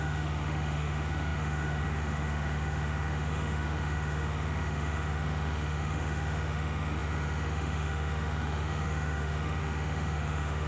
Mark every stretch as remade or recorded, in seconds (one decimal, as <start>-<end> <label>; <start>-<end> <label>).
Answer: 0.0-10.7 remade